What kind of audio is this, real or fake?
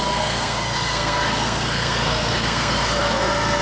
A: fake